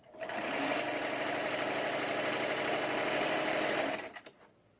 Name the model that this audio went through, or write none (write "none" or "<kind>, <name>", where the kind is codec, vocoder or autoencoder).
none